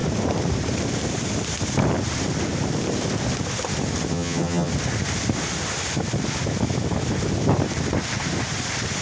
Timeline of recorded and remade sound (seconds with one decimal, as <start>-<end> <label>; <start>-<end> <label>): 0.0-4.1 recorded; 4.1-4.7 remade; 4.7-9.0 recorded